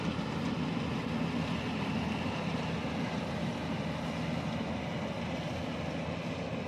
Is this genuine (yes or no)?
yes